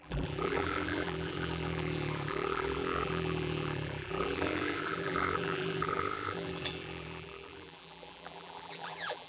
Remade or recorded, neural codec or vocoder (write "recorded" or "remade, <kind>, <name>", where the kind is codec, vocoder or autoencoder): remade, vocoder, BigVGAN v2